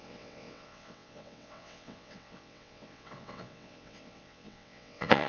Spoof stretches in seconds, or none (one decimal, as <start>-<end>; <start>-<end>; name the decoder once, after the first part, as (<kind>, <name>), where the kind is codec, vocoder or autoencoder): 0.0-5.3 (vocoder, WaveNeXt)